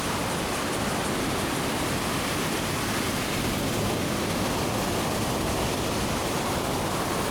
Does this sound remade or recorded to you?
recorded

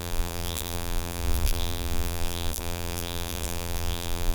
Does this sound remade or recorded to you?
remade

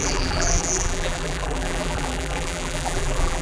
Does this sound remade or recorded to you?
remade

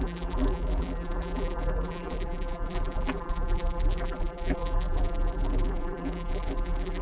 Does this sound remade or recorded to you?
remade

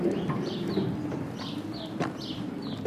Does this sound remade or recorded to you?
remade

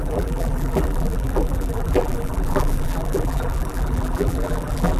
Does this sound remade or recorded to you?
remade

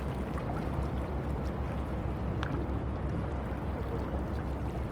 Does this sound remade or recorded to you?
recorded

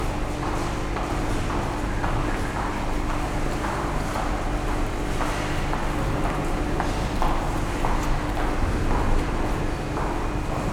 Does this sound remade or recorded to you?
recorded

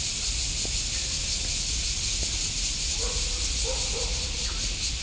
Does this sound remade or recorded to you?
recorded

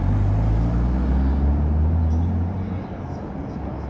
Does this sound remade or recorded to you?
recorded